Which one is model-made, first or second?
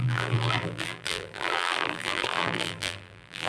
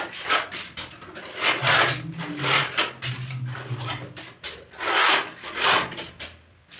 first